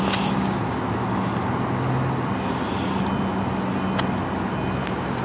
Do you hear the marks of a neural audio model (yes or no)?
no